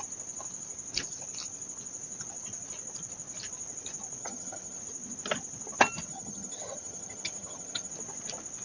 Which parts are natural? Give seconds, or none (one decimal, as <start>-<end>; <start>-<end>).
0.0-4.2; 4.8-6.1; 7.9-8.6